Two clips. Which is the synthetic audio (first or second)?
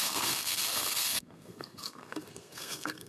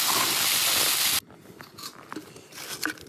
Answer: first